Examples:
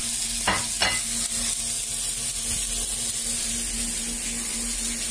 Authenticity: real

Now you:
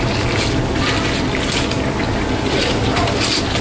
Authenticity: real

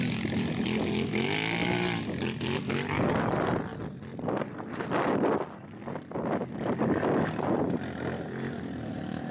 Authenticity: real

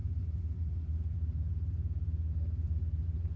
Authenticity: real